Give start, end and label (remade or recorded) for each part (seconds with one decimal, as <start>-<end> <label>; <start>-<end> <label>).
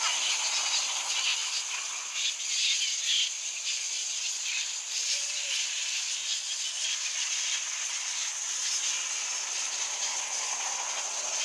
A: 0.0-1.3 recorded; 1.3-1.9 remade; 1.9-11.4 recorded